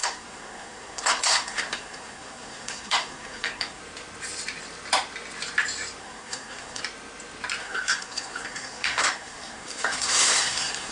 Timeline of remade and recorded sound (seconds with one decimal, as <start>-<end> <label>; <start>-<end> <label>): 0.0-3.8 remade; 3.8-6.0 recorded; 6.0-6.8 remade; 6.8-7.6 recorded; 7.6-10.9 remade